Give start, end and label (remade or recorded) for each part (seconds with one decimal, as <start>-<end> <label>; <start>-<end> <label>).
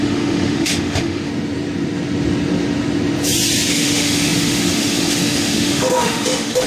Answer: 0.0-1.3 remade; 1.3-3.7 recorded; 3.7-6.7 remade